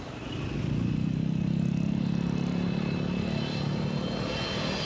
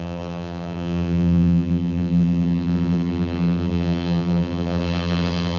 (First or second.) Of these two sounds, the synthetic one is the second